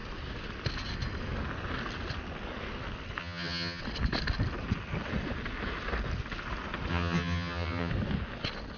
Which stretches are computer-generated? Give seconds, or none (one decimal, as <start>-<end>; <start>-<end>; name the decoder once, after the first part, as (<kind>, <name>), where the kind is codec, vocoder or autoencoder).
3.2-3.8 (vocoder, HiFi-GAN); 6.9-7.9